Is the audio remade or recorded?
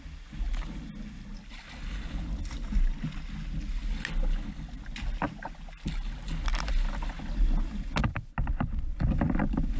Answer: recorded